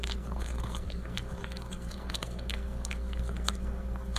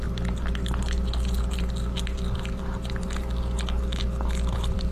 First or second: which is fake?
first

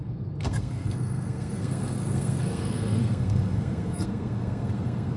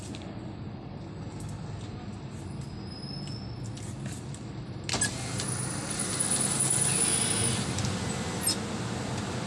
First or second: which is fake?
first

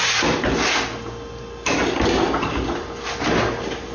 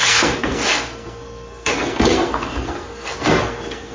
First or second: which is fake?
second